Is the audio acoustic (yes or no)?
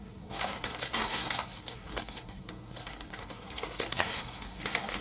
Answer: no